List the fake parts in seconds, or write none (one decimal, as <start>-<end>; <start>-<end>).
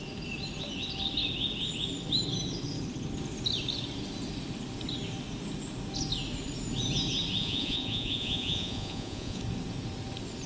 7.4-9.4